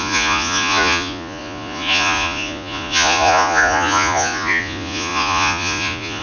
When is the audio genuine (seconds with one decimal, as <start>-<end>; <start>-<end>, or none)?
none